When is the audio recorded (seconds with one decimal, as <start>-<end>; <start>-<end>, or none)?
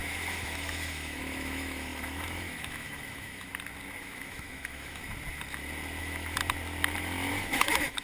3.5-4.0; 5.0-6.0; 6.4-7.3